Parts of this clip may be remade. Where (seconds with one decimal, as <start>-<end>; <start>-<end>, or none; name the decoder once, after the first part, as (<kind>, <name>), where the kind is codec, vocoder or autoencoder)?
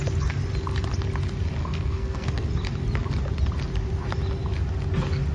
1.6-2.5 (codec, SNAC)